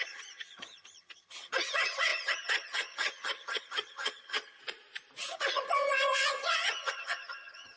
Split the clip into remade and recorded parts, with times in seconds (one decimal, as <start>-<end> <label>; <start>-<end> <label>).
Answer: 0.0-4.6 remade; 4.6-5.2 recorded; 5.2-7.8 remade